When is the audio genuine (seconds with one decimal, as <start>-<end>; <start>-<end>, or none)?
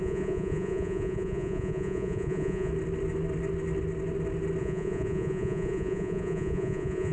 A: 2.7-4.6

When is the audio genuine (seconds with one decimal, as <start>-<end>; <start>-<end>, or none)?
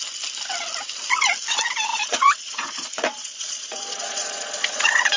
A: 0.0-1.9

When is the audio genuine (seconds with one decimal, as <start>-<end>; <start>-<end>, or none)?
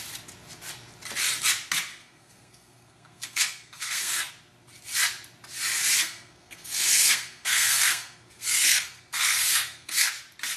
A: 0.0-1.9; 4.3-6.0; 10.1-10.6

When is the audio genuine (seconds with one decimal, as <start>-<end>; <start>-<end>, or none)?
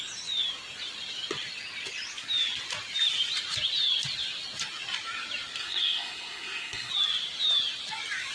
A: 0.0-5.6; 6.9-8.3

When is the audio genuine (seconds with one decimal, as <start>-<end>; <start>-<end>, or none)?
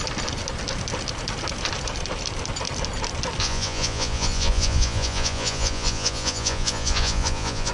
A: 0.0-3.4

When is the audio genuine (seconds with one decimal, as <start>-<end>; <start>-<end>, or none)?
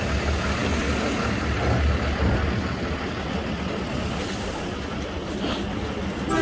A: 0.0-6.4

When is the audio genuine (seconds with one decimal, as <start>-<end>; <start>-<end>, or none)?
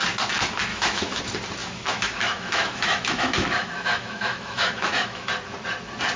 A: 0.0-0.7; 1.2-1.6; 5.3-6.2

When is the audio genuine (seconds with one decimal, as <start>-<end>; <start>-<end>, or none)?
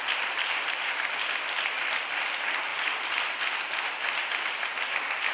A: 0.0-5.3